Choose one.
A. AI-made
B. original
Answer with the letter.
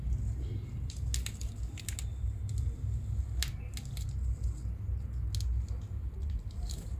B